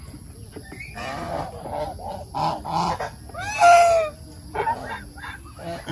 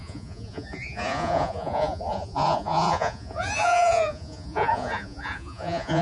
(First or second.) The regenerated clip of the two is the second